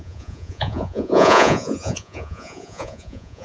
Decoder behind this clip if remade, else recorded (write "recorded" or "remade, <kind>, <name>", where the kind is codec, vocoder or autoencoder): remade, vocoder, Vocos